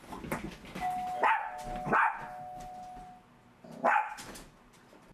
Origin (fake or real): real